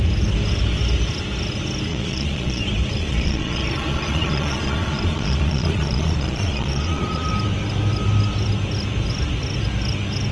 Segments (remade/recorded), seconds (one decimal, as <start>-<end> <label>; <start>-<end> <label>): 0.0-1.9 recorded; 1.9-2.6 remade; 2.6-3.0 recorded; 3.0-7.3 remade; 7.3-10.3 recorded

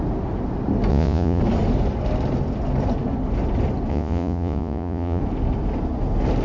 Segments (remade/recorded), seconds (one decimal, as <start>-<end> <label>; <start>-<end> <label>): 0.0-0.9 recorded; 0.9-1.4 remade; 1.4-3.9 recorded; 3.9-5.2 remade; 5.2-6.4 recorded

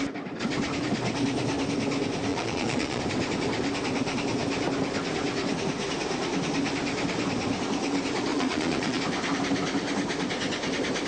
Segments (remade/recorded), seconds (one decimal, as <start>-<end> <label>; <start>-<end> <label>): 0.0-2.3 recorded; 2.3-3.0 remade; 3.0-8.3 recorded; 8.3-9.0 remade; 9.0-11.1 recorded

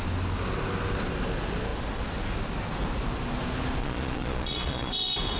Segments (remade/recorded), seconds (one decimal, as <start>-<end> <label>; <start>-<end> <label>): 0.0-3.8 recorded; 3.8-4.9 remade; 4.9-5.4 recorded

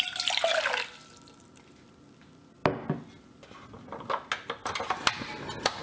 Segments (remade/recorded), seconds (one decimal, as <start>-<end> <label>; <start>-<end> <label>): 0.0-5.8 recorded

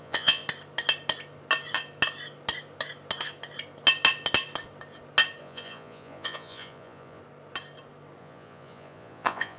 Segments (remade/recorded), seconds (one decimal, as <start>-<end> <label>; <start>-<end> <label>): 0.0-0.4 remade; 0.4-5.4 recorded; 5.4-7.2 remade; 7.2-8.2 recorded; 8.2-9.6 remade